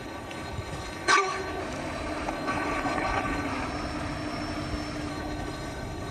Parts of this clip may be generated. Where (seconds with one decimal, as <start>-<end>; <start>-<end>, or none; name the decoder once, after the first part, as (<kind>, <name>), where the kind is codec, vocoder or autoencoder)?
0.0-1.6 (codec, HILCodec); 2.3-3.5; 5.1-6.1